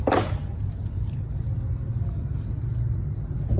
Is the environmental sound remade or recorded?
recorded